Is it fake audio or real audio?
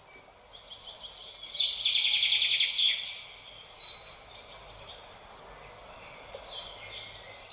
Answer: real